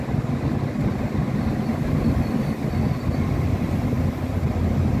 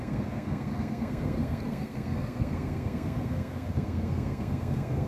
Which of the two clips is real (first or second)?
first